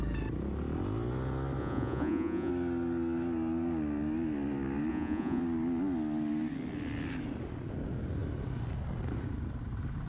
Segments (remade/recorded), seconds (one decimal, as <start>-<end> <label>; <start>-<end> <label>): 0.0-1.6 recorded; 1.6-2.5 remade; 2.5-4.9 recorded; 4.9-5.4 remade; 5.4-10.1 recorded